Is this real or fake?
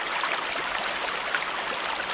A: real